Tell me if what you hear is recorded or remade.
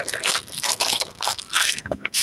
remade